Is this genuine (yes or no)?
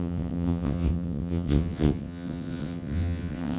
no